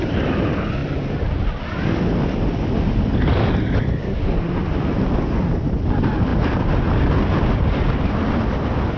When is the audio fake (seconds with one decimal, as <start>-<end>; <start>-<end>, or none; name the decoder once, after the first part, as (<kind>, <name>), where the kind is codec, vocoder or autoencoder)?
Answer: none